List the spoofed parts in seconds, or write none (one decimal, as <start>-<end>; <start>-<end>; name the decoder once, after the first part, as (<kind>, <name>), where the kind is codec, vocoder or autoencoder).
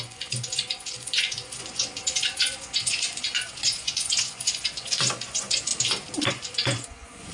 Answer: 0.0-5.7 (vocoder, Vocos); 6.3-7.3